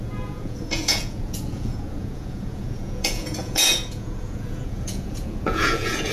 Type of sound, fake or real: fake